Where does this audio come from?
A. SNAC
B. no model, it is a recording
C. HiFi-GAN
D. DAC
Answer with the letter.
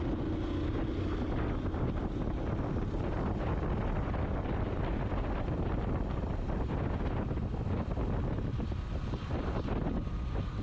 B